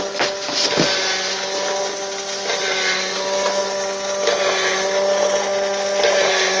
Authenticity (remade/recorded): recorded